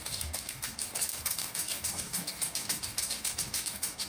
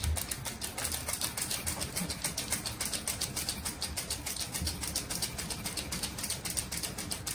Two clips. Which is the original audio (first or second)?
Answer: second